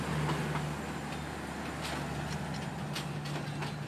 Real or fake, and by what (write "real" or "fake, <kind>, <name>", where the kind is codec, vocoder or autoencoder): real